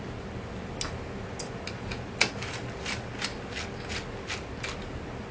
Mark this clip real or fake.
real